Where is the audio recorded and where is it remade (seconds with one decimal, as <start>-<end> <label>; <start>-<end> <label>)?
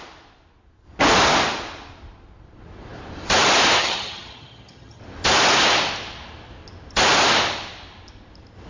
0.0-3.8 recorded; 3.8-5.0 remade; 5.0-8.7 recorded